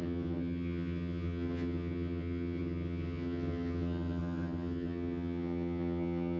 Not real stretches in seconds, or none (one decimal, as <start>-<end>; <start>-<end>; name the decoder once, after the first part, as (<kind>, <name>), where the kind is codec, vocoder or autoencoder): 0.0-6.4 (vocoder, HiFi-GAN)